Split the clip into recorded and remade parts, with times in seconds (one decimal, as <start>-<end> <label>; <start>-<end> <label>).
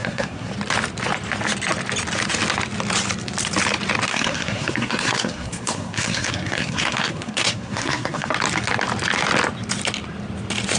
0.0-0.5 remade; 0.5-4.1 recorded; 4.1-8.3 remade; 8.3-10.8 recorded